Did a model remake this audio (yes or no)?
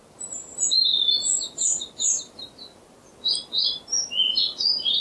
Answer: no